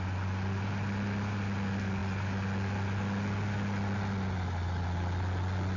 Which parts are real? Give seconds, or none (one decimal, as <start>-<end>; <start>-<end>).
0.0-5.8